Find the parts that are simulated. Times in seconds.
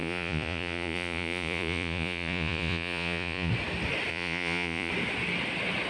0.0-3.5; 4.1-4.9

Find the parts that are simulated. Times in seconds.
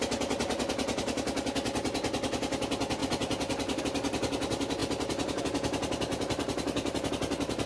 3.0-3.8; 6.1-7.1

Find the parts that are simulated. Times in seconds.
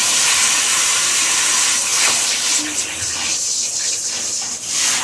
0.0-1.3